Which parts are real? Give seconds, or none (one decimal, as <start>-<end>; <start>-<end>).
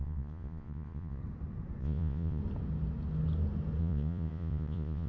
1.2-1.8; 2.4-3.8